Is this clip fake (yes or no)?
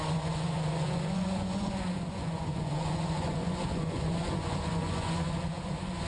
yes